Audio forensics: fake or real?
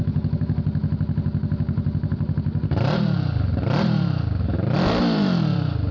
real